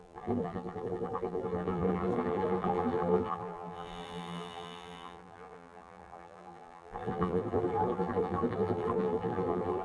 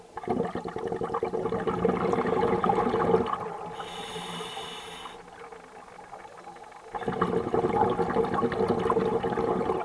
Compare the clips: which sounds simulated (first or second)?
first